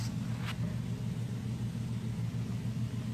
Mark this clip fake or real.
real